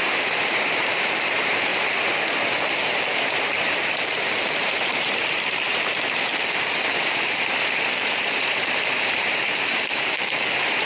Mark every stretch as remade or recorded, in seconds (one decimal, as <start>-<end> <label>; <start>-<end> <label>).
0.0-1.7 remade; 1.7-2.5 recorded; 2.5-10.9 remade